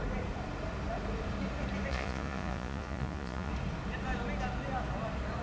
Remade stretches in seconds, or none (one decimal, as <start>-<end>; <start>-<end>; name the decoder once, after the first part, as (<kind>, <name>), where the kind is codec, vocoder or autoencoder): 1.9-3.5 (vocoder, Vocos)